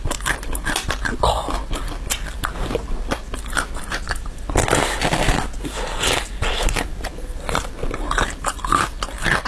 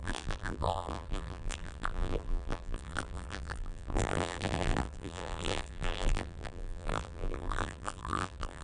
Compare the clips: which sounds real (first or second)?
first